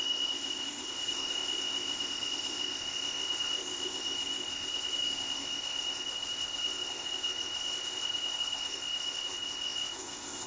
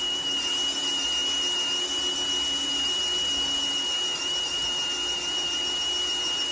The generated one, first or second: first